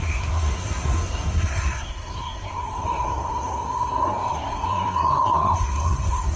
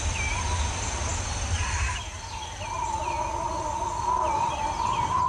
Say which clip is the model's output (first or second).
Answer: first